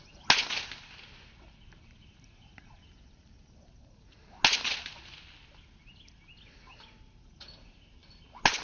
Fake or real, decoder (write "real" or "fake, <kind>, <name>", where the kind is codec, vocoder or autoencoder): real